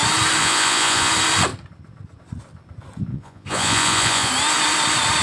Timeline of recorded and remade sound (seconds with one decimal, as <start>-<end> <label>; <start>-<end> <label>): 0.0-0.4 recorded; 0.4-1.1 remade; 1.1-3.1 recorded; 3.1-4.3 remade; 4.3-5.2 recorded